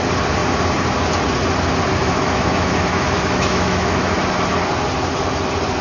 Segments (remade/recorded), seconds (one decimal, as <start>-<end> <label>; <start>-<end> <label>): 0.0-2.0 recorded; 2.0-4.2 remade; 4.2-5.8 recorded